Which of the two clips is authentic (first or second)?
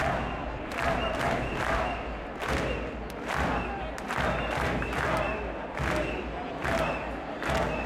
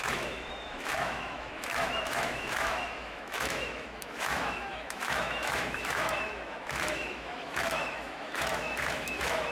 first